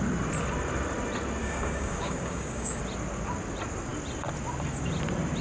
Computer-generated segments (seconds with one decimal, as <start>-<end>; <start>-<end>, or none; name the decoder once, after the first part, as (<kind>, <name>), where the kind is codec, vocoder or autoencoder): 1.4-2.8 (codec, DAC)